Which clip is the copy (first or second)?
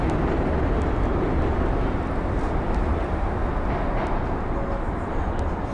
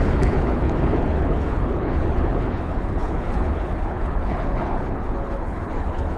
second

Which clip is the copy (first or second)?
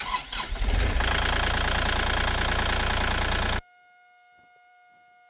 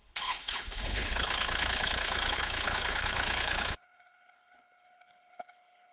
second